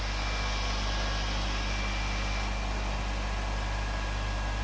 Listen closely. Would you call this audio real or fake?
real